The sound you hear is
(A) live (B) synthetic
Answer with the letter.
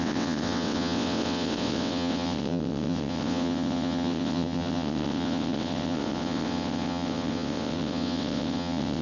B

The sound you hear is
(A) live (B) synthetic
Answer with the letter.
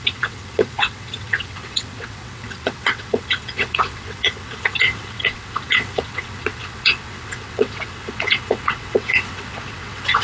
B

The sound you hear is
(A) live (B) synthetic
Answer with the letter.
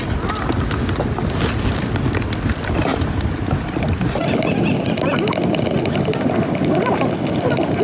A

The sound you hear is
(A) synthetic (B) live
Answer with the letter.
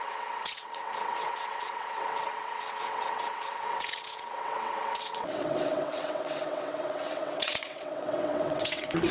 A